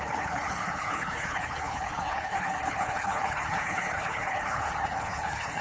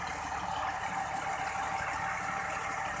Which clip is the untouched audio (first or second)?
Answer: second